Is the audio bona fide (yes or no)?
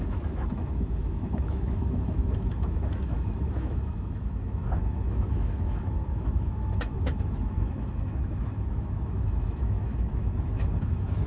no